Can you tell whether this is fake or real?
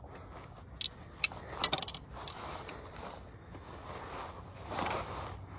real